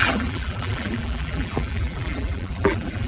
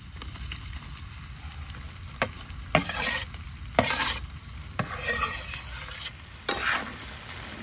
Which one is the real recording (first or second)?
second